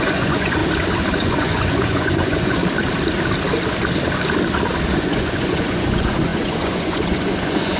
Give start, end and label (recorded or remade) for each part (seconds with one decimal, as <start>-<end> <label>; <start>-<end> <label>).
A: 0.0-0.6 remade; 0.6-1.2 recorded; 1.2-2.6 remade; 2.6-4.9 recorded; 4.9-7.8 remade